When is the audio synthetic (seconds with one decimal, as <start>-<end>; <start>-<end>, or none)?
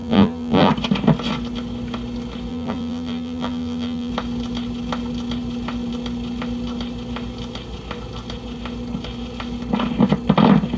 0.0-0.7; 2.5-4.1